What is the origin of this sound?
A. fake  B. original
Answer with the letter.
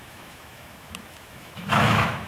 A